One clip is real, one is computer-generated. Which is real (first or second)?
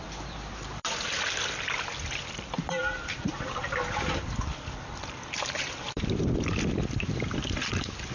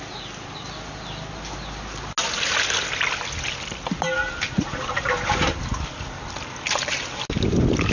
second